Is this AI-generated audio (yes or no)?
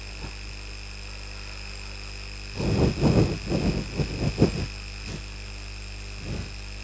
no